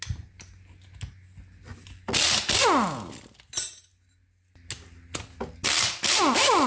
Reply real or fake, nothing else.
real